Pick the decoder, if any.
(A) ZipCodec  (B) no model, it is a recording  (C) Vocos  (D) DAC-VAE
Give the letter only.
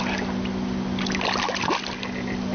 B